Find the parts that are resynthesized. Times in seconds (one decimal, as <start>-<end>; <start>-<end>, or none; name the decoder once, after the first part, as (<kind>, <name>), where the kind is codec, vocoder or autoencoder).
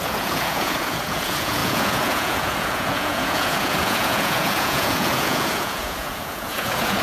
0.0-7.0 (vocoder, Vocos)